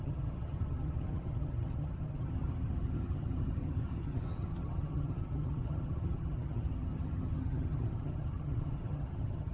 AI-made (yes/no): yes